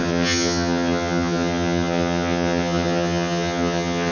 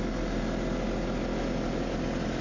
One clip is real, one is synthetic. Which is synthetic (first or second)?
first